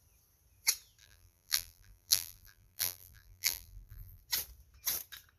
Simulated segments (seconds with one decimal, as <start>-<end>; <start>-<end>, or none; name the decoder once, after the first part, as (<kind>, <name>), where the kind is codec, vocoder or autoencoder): 1.0-4.2 (vocoder, BigVGAN v2)